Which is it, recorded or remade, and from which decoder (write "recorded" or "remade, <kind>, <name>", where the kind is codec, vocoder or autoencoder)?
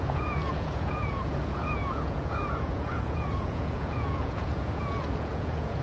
remade, vocoder, Vocos